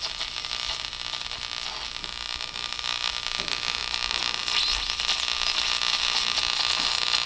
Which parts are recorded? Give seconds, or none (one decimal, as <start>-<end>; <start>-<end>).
0.0-2.0; 3.1-7.3